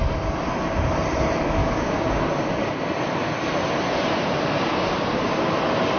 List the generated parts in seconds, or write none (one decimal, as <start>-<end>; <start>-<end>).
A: 1.6-2.2